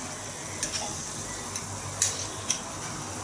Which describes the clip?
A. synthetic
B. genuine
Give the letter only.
B